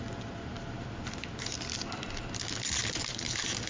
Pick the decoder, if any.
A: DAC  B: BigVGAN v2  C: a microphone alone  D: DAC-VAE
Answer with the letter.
C